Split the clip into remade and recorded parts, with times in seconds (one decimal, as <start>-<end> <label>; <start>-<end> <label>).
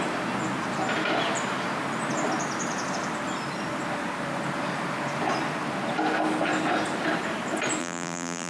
0.0-7.8 recorded; 7.8-8.5 remade